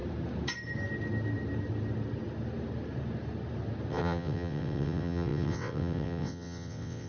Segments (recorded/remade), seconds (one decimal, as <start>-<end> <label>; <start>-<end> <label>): 0.0-3.9 recorded; 3.9-7.1 remade